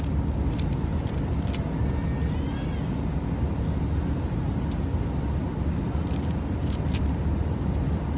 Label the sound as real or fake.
real